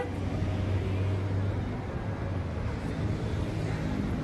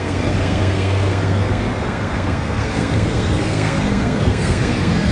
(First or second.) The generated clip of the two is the second